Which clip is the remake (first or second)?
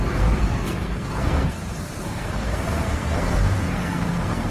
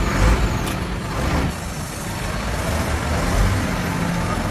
first